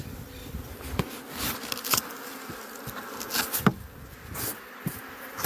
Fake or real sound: real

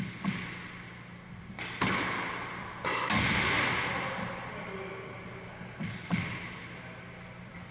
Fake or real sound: real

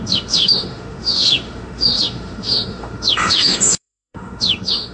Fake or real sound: fake